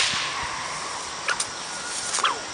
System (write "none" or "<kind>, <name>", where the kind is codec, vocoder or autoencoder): none